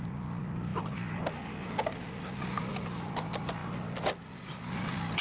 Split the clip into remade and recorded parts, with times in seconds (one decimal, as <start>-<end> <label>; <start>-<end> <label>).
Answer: 0.0-5.2 recorded